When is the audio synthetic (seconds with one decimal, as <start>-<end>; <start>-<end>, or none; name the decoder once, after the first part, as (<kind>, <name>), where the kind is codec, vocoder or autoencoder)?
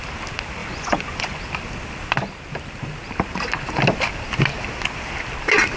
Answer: 0.6-1.4 (vocoder, Vocos)